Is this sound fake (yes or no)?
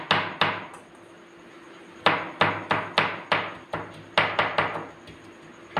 no